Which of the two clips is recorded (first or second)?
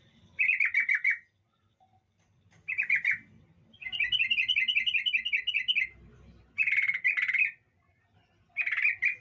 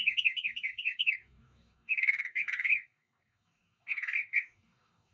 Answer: first